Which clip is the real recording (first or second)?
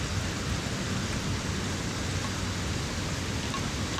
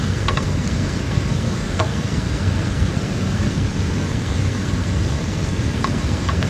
first